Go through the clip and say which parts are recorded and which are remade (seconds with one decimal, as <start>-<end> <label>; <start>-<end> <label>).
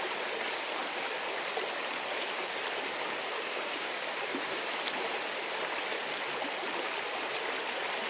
0.0-3.3 recorded; 3.3-4.3 remade; 4.3-8.1 recorded